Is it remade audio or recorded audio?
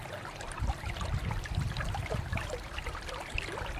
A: remade